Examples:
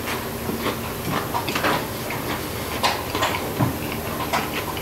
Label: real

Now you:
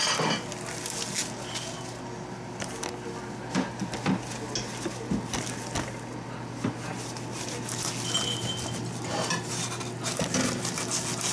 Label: real